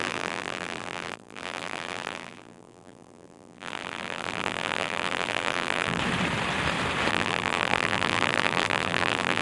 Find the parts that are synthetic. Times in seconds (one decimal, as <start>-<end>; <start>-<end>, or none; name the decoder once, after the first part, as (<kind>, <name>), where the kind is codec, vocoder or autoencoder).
0.0-6.0 (vocoder, BigVGAN v2); 7.1-9.4